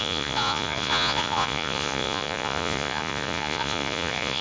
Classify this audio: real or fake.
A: fake